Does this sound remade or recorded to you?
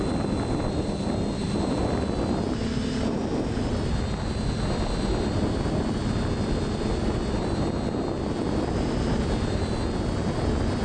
recorded